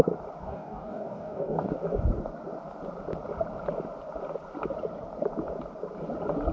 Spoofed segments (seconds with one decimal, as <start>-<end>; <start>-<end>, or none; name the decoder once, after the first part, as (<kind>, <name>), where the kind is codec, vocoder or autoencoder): 0.4-1.7 (codec, DAC)